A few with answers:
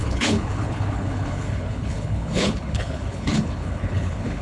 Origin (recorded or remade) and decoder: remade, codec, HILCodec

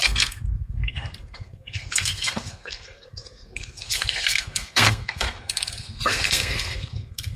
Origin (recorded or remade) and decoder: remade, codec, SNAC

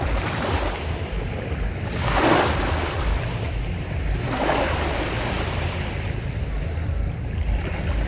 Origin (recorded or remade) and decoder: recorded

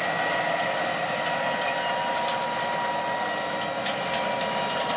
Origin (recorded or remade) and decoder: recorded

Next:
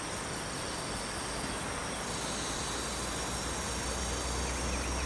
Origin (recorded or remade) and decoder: recorded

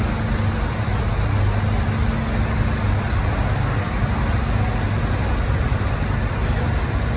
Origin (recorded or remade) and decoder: recorded